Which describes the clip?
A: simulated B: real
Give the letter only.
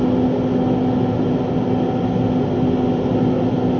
B